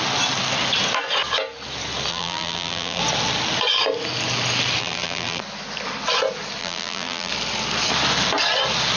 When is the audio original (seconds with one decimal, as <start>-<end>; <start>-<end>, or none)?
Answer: 0.0-2.1; 3.0-4.8; 5.4-6.6; 7.3-9.0